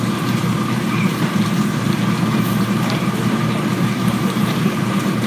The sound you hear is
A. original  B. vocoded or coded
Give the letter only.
B